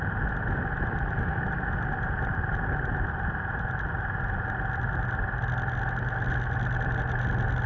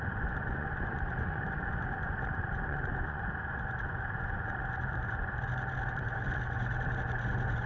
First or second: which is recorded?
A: first